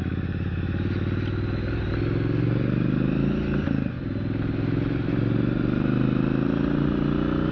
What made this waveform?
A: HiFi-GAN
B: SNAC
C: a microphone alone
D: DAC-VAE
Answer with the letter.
C